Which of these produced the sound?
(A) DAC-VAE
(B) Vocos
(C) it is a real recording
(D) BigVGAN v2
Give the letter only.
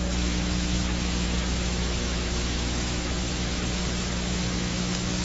A